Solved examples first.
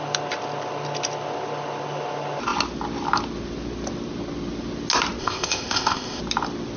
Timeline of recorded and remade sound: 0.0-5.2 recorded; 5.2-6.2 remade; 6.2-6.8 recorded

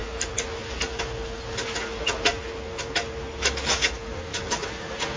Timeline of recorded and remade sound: 0.0-5.2 recorded

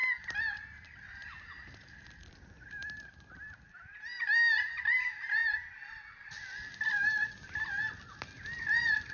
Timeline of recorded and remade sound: 0.0-9.1 recorded